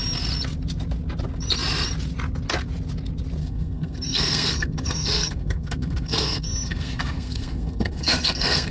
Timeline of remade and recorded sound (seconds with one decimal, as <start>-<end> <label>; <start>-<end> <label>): 0.0-3.4 recorded; 3.4-8.7 remade